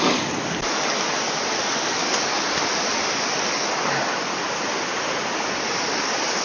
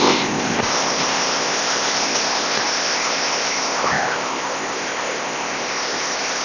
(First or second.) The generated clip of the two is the second